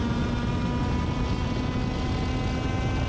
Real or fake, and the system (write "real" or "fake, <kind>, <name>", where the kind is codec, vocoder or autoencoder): real